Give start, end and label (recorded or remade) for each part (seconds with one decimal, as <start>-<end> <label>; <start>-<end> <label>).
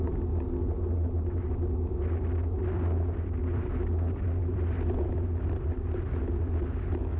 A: 0.0-4.4 recorded; 4.4-5.7 remade; 5.7-7.2 recorded